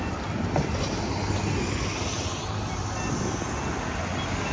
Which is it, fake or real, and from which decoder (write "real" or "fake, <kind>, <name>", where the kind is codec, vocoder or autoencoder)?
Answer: real